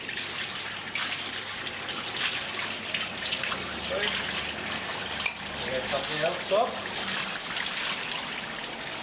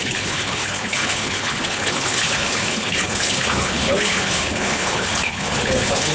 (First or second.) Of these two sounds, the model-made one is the second